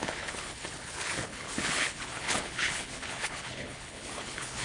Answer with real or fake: fake